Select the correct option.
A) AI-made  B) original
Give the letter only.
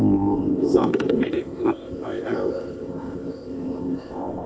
A